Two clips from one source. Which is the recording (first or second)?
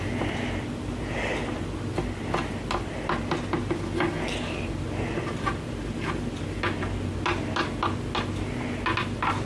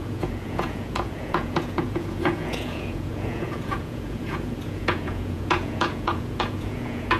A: first